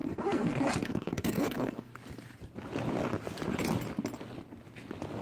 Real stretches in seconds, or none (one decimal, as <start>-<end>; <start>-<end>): 1.9-5.2